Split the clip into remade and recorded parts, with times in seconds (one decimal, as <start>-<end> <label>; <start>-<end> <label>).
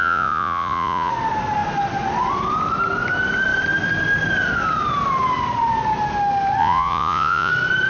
0.0-1.1 remade; 1.1-6.6 recorded; 6.6-7.5 remade; 7.5-7.9 recorded